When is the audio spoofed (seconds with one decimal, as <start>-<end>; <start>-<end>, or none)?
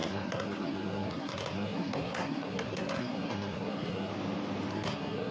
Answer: 0.0-4.1; 4.7-5.3